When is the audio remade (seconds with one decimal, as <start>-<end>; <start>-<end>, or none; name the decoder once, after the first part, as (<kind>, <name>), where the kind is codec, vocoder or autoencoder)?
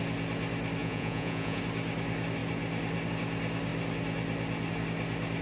0.8-1.6 (vocoder, Vocos)